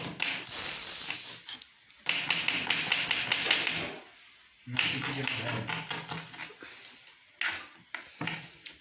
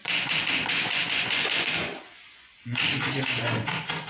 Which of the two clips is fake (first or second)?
second